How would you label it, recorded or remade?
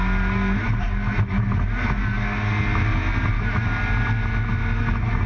recorded